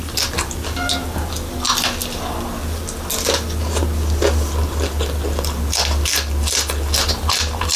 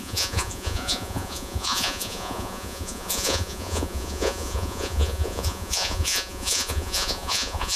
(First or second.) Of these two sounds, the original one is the first